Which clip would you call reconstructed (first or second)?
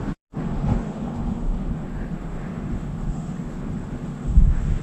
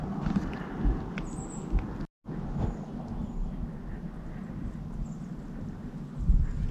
first